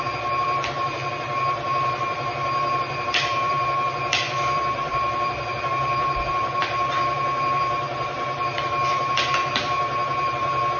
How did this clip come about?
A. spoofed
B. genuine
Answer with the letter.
A